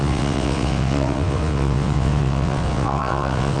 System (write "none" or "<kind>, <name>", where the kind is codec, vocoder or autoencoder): vocoder, WaveNeXt